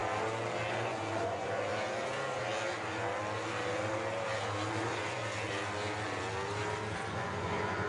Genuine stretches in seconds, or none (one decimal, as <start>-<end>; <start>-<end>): 0.0-0.7; 1.7-4.7; 5.2-7.1